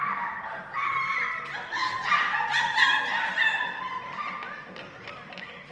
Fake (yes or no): no